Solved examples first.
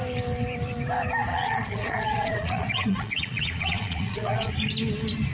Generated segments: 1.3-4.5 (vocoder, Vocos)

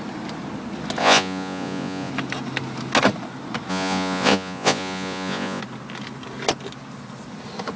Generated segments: 1.0-2.1 (vocoder, Vocos); 3.7-5.6